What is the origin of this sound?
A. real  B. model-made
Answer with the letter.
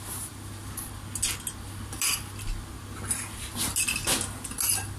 A